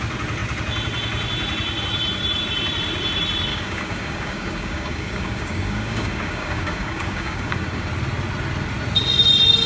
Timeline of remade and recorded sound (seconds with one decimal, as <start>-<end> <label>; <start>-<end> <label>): 0.0-3.5 recorded; 3.5-7.9 remade; 7.9-9.7 recorded